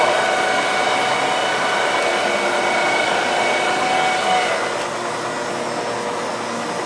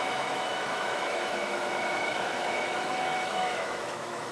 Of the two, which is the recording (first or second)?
first